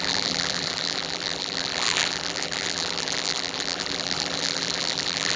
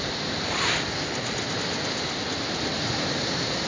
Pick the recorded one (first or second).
second